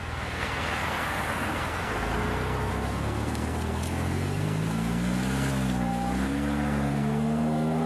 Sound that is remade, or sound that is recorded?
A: remade